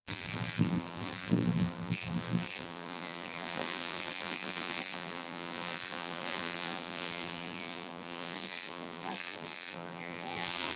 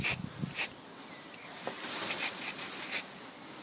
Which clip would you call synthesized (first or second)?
first